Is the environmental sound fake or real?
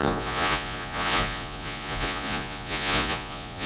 fake